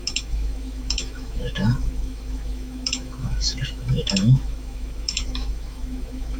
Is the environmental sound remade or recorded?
remade